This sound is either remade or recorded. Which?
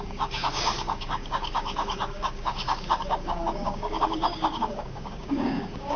remade